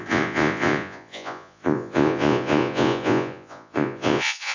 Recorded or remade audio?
remade